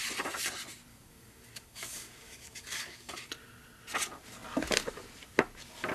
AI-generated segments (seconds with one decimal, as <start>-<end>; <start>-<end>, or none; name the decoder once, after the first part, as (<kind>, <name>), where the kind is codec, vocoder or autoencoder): 0.9-3.3 (codec, DAC)